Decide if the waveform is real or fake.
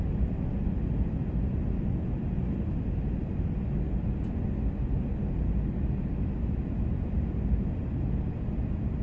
real